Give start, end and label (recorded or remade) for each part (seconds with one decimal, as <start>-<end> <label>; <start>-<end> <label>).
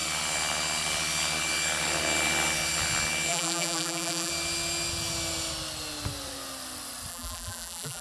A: 0.0-3.3 recorded; 3.3-4.3 remade; 4.3-7.1 recorded; 7.1-8.0 remade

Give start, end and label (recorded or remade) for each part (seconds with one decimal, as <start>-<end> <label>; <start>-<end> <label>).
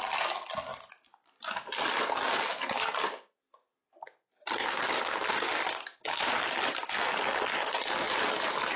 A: 0.0-8.8 recorded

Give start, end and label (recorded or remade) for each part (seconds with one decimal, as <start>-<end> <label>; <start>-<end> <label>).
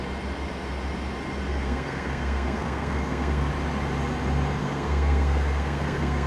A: 0.0-1.5 recorded; 1.5-3.5 remade; 3.5-4.6 recorded; 4.6-6.3 remade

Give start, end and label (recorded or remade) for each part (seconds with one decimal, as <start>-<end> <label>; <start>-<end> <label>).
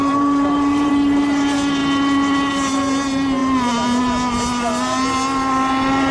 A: 0.0-0.9 remade; 0.9-6.1 recorded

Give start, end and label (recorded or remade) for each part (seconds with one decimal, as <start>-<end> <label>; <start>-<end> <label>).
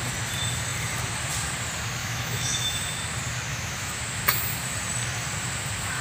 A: 0.0-2.0 recorded; 2.0-3.0 remade; 3.0-3.5 recorded; 3.5-4.0 remade; 4.0-6.0 recorded